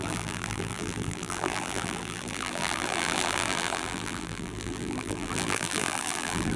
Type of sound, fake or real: fake